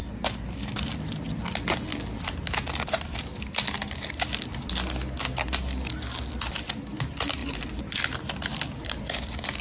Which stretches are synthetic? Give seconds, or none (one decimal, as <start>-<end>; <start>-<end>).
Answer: none